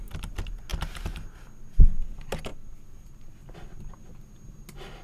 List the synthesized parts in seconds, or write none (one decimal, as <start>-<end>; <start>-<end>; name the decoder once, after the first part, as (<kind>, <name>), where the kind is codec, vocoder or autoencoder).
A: none